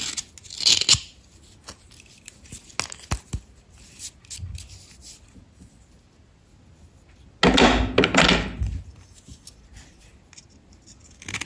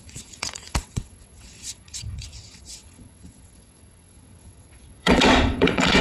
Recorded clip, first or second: first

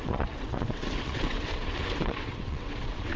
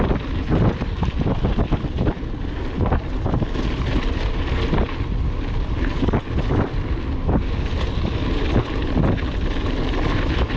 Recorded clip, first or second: second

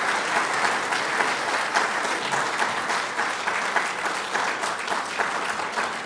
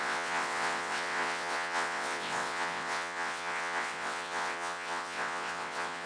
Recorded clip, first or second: first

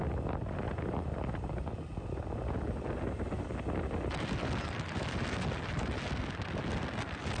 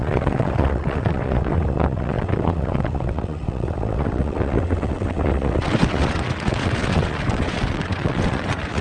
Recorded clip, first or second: first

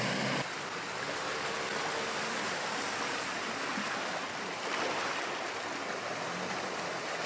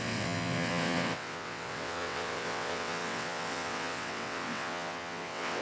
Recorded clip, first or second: first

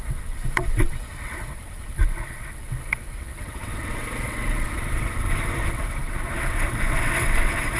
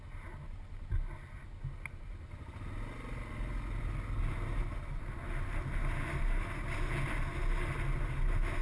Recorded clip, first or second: second